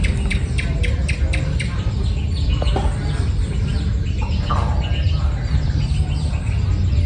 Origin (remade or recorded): recorded